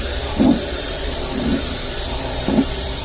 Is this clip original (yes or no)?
no